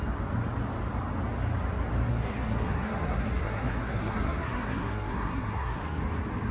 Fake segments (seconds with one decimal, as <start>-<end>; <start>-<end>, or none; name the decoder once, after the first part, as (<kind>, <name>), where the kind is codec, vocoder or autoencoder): 2.1-6.0 (codec, SNAC)